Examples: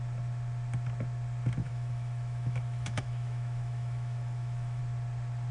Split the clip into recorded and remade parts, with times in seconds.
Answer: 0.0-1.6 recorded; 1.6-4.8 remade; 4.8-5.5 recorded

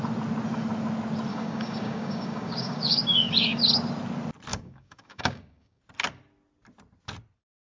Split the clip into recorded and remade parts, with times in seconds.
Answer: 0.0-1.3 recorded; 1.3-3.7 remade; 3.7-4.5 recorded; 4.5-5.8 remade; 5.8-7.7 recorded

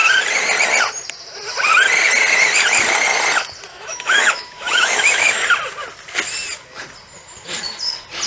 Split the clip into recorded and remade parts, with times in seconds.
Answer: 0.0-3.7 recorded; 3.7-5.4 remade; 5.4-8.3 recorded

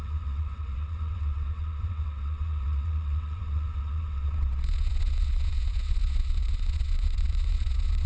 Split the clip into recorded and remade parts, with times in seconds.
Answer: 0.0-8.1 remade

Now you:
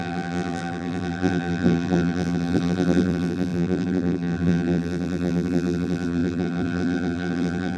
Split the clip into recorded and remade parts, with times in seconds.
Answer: 0.0-7.8 remade

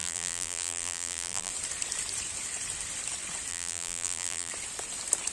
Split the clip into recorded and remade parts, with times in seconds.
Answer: 0.0-1.5 remade; 1.5-3.5 recorded; 3.5-4.5 remade; 4.5-5.3 recorded

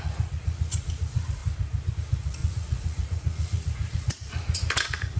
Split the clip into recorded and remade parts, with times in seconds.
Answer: 0.0-1.4 remade; 1.4-1.9 recorded; 1.9-5.2 remade